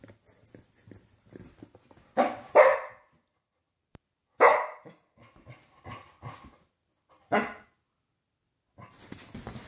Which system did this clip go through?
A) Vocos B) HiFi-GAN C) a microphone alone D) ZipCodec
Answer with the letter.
C